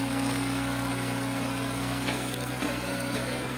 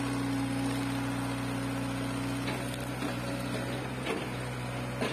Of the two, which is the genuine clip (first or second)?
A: second